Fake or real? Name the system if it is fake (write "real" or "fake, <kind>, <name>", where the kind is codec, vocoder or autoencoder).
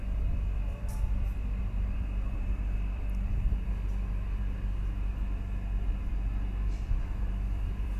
fake, vocoder, BigVGAN v2